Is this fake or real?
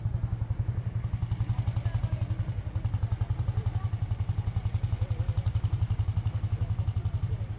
real